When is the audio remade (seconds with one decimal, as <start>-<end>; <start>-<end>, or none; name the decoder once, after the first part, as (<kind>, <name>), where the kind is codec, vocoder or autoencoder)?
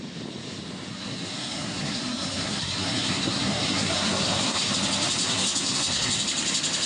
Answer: 0.9-4.7 (codec, SNAC); 5.2-6.2